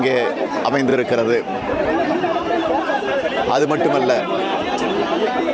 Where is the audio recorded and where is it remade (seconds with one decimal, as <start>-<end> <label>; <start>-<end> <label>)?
0.0-0.9 recorded; 0.9-4.2 remade; 4.2-5.5 recorded